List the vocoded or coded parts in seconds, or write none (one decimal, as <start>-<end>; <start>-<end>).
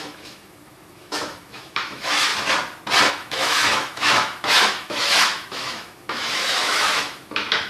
0.0-2.3; 3.1-7.7